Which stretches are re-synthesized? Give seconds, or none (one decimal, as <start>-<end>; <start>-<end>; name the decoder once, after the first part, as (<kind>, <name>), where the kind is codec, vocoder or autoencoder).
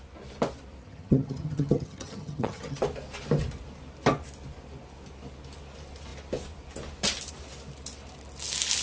0.8-2.8 (vocoder, HiFi-GAN)